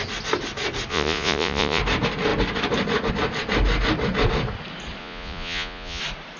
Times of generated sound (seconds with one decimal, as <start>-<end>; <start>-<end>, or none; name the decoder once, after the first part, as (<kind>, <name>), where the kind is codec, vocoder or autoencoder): 0.9-1.8 (vocoder, Vocos); 5.0-6.0